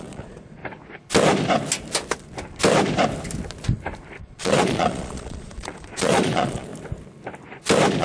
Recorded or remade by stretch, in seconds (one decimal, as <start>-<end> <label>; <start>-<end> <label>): 0.0-0.6 remade; 0.6-4.2 recorded; 4.2-6.7 remade; 6.7-8.0 recorded